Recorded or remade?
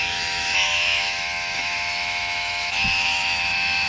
remade